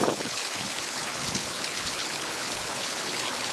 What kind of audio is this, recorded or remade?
remade